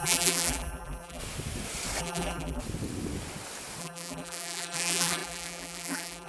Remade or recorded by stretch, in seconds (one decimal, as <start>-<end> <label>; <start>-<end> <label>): 0.0-1.2 remade; 1.2-2.0 recorded; 2.0-2.6 remade; 2.6-3.8 recorded; 3.8-6.3 remade